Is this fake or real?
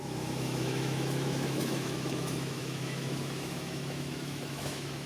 fake